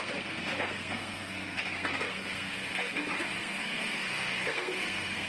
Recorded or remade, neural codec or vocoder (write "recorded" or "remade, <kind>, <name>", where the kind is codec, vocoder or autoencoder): remade, codec, SNAC